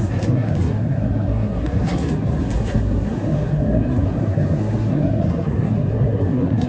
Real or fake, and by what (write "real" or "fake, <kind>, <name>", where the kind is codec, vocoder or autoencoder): fake, codec, SNAC